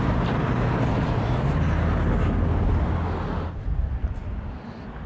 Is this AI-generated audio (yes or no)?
no